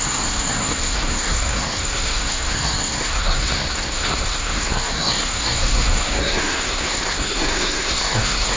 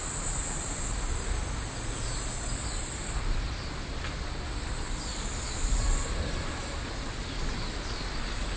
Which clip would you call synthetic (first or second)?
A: first